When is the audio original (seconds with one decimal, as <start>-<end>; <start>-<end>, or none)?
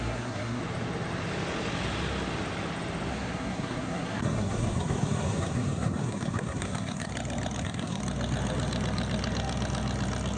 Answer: 0.6-3.1; 7.1-7.6; 8.0-10.4